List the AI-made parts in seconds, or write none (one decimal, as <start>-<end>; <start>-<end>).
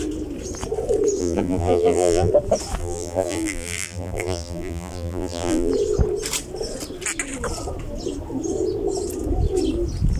1.2-2.3; 2.8-5.7